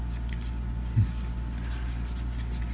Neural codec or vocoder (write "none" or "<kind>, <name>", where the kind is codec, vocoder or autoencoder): none